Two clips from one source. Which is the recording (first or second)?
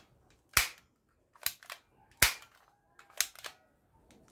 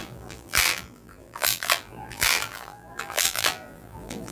first